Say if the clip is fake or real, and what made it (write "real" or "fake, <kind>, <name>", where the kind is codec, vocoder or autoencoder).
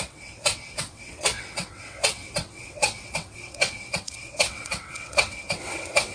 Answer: fake, vocoder, WaveNeXt